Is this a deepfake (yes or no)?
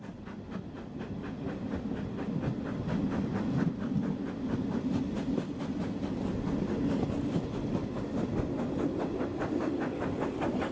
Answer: no